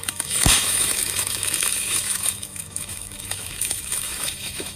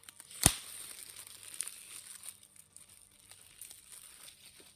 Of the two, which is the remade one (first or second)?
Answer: first